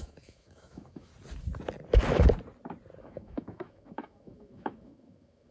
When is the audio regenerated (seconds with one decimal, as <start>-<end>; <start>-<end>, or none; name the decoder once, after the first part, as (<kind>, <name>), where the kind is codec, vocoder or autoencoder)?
0.0-1.1 (autoencoder, DAC-VAE); 3.0-5.5